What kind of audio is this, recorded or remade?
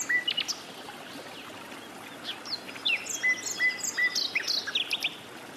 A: recorded